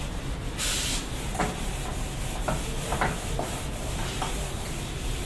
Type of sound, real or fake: real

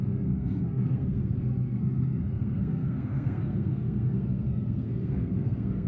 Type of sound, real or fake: fake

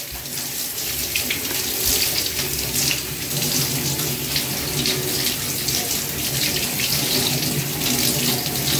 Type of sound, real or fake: real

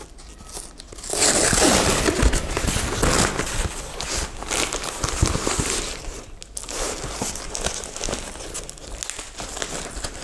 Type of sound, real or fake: real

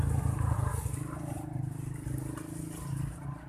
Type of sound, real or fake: real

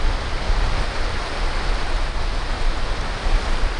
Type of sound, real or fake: real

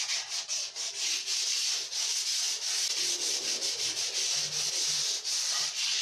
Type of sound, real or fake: real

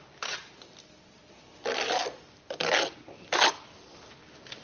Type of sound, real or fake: real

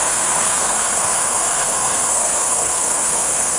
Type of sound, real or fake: fake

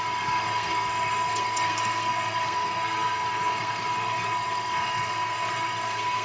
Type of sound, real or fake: fake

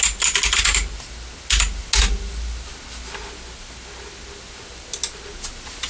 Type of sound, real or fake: real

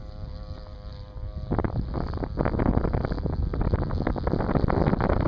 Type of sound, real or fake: real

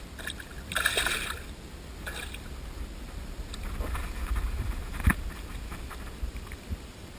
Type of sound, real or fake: real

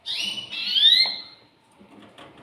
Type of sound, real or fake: real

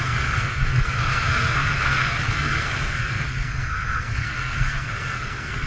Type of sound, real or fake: fake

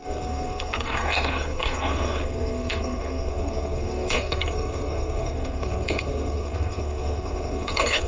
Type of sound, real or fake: fake